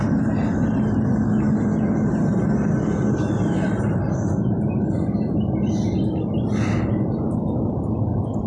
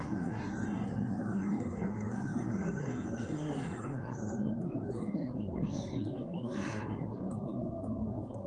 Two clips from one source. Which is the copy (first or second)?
second